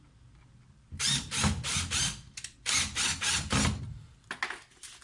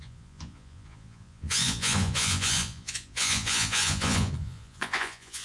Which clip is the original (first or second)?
first